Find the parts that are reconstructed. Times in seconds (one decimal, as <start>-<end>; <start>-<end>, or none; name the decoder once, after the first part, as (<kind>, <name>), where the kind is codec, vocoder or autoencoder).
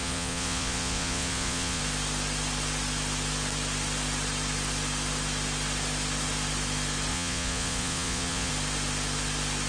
0.0-1.8 (vocoder, Vocos); 7.1-8.5